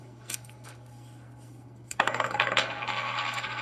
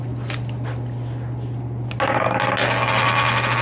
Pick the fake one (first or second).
first